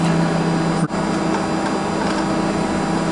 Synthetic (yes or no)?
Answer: no